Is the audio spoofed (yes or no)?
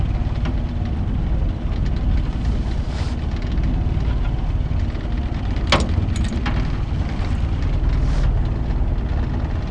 no